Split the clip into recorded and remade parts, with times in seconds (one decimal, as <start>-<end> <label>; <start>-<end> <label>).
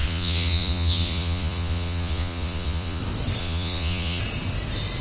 0.0-3.0 remade; 3.0-3.4 recorded; 3.4-4.2 remade; 4.2-5.0 recorded